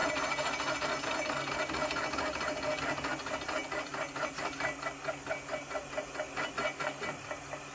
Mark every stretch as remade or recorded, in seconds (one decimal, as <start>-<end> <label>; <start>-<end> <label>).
0.0-7.7 recorded